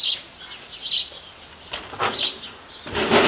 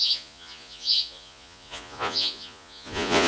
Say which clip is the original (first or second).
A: first